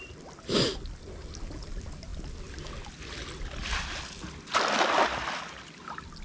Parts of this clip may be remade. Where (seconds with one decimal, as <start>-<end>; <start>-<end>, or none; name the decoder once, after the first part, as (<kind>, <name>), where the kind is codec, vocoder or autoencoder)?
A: none